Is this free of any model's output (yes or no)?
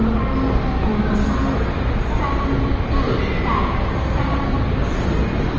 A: yes